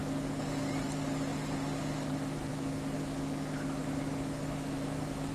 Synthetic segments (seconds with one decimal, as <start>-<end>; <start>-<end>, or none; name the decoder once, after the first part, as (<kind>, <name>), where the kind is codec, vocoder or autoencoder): 2.1-5.3 (autoencoder, DAC-VAE)